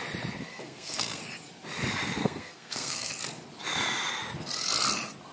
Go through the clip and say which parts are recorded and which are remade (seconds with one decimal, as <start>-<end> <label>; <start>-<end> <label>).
0.0-0.5 recorded; 0.5-1.2 remade; 1.2-2.2 recorded; 2.2-3.1 remade; 3.1-5.3 recorded

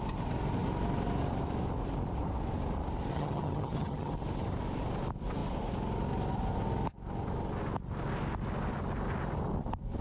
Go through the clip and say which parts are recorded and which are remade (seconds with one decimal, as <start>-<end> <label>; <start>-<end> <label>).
0.0-3.1 recorded; 3.1-4.1 remade; 4.1-10.0 recorded

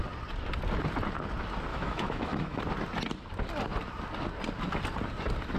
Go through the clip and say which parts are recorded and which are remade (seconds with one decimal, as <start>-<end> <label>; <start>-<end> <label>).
0.0-1.7 recorded; 1.7-2.6 remade; 2.6-5.6 recorded

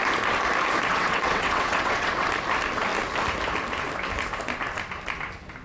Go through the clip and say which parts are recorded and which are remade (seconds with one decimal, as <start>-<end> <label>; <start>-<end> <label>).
0.0-0.9 recorded; 0.9-2.3 remade; 2.3-5.6 recorded